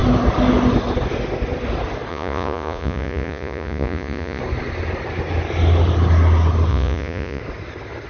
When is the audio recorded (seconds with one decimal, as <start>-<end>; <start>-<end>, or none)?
0.0-2.1; 4.4-6.7; 7.4-8.1